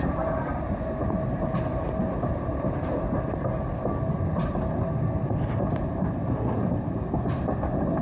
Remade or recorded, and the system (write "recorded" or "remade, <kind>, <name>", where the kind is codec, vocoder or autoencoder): recorded